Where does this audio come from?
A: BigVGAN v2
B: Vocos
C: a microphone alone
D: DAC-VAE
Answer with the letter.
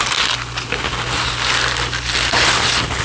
C